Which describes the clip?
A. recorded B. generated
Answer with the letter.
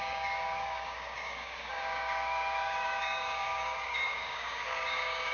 B